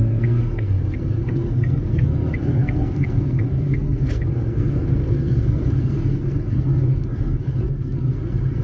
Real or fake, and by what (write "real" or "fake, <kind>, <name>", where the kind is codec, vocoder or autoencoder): fake, codec, SNAC